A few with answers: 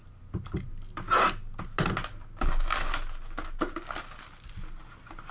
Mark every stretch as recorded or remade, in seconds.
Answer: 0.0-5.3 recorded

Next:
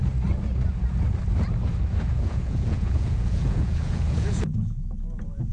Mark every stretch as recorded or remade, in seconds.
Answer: 0.0-2.1 recorded; 2.1-5.5 remade

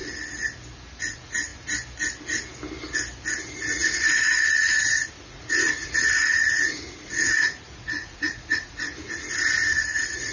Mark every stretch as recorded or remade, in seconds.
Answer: 0.0-1.0 recorded; 1.0-1.5 remade; 1.5-3.5 recorded; 3.5-10.3 remade

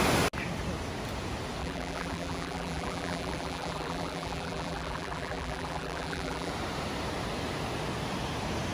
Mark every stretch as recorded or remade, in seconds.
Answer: 0.0-1.6 recorded; 1.6-6.5 remade; 6.5-8.7 recorded

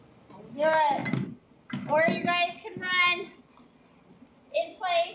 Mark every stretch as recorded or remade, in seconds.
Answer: 0.0-1.0 recorded; 1.0-1.5 remade; 1.5-5.1 recorded